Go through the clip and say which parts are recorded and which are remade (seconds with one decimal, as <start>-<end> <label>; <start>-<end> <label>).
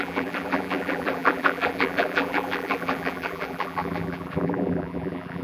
0.0-5.4 remade